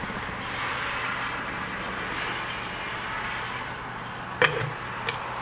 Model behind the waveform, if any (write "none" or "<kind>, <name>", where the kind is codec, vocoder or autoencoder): none